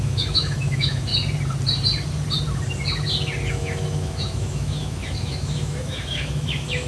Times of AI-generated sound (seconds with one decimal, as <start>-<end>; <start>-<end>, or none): 0.0-1.1; 3.5-6.9